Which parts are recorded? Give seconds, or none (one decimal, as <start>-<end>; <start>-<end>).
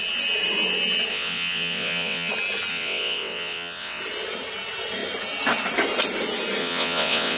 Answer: 0.0-1.1; 2.3-2.7; 4.0-6.6